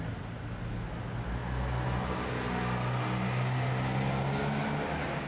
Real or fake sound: real